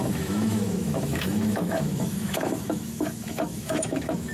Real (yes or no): no